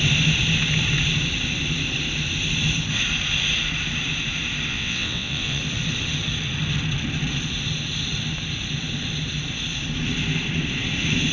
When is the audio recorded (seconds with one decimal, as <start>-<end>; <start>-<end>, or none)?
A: 0.0-4.7; 5.6-11.3